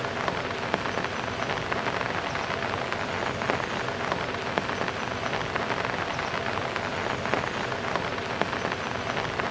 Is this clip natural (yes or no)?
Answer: yes